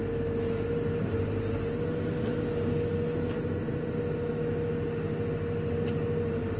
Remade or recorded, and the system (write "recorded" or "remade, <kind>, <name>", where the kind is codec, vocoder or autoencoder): recorded